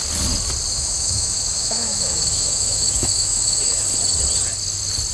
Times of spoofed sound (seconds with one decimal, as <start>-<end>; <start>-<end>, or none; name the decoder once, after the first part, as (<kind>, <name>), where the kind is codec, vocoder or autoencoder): 0.7-3.8 (autoencoder, DAC-VAE)